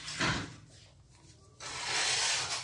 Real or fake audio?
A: real